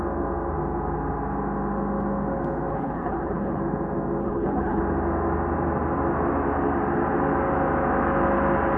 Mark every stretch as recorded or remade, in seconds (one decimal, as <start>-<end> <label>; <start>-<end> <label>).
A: 0.0-2.7 recorded; 2.7-3.6 remade; 3.6-4.2 recorded; 4.2-4.8 remade; 4.8-8.8 recorded